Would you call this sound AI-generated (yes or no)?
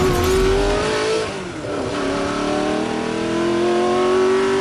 no